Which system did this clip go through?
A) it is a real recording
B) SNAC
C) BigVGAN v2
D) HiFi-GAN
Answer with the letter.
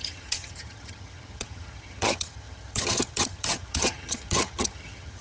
D